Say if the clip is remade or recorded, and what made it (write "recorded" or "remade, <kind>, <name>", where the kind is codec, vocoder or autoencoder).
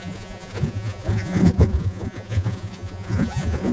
remade, vocoder, Vocos